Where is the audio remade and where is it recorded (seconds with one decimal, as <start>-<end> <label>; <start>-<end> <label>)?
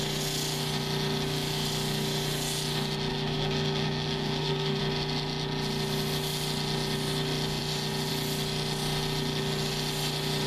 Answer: 0.0-3.1 recorded; 3.1-4.8 remade; 4.8-10.5 recorded